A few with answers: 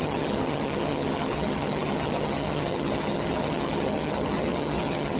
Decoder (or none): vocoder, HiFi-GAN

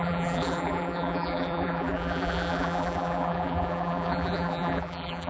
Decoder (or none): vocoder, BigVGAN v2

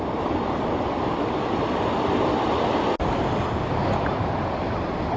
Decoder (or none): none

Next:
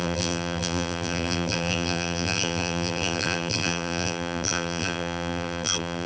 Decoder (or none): vocoder, BigVGAN v2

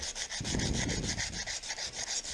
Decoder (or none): none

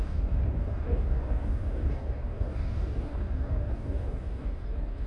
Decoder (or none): codec, DAC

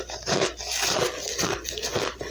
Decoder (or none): none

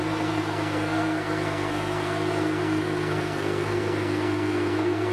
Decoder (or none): codec, SNAC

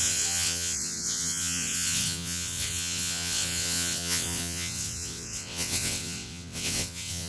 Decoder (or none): vocoder, WaveNeXt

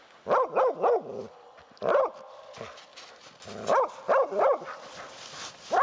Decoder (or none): none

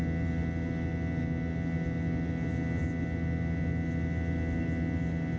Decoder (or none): none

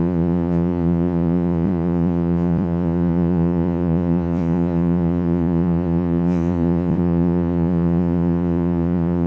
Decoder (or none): vocoder, Vocos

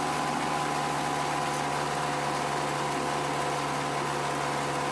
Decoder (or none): none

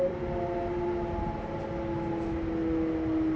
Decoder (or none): none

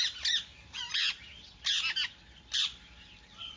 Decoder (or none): none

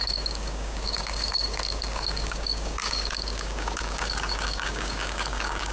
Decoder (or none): codec, DAC